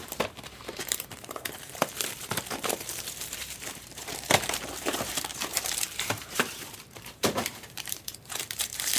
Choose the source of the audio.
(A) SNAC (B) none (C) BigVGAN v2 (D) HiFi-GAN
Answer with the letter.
C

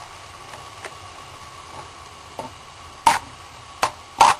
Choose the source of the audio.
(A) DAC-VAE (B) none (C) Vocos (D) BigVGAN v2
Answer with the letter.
B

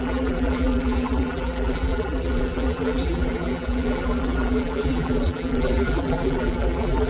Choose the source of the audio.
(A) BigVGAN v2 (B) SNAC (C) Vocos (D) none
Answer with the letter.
A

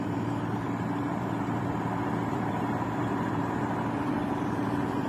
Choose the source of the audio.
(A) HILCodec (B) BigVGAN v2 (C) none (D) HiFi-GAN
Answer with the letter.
B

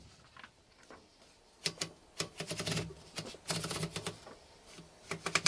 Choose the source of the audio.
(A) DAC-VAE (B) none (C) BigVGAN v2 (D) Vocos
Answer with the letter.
B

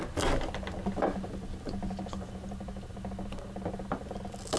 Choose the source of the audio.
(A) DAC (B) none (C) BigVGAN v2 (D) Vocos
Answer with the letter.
B